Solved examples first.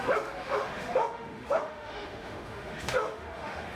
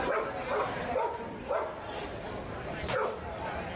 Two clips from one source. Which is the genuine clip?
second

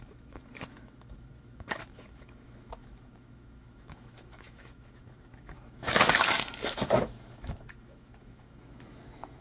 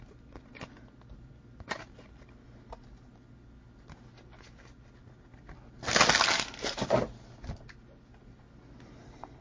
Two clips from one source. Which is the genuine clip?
second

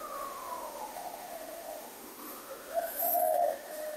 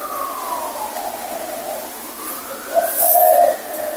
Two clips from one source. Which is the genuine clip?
second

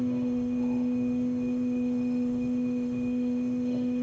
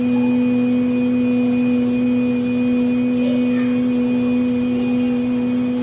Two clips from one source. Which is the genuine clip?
second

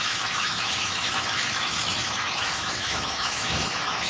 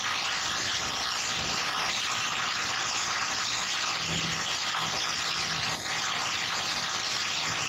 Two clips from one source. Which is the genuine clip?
second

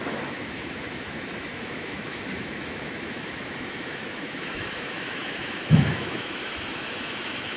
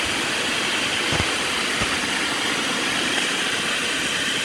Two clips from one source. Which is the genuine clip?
second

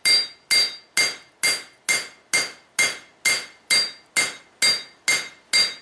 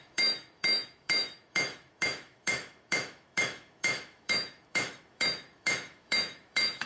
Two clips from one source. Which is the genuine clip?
first